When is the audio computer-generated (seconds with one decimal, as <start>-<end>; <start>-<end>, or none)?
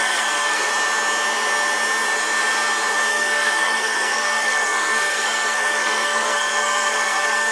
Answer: 0.0-0.7; 3.1-7.5